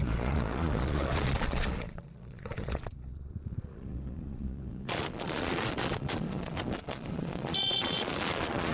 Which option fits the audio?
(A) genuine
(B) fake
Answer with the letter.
B